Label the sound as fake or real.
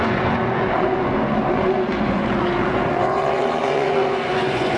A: fake